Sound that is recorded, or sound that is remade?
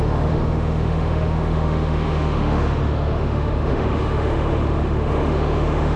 remade